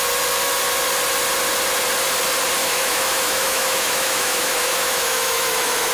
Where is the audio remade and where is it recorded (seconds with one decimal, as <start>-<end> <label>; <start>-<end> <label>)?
0.0-2.6 recorded; 2.6-5.9 remade